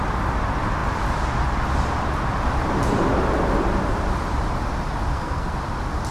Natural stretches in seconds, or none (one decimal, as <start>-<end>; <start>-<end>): 0.0-5.1; 5.6-6.1